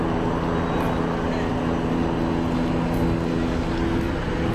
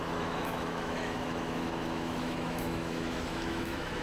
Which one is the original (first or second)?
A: first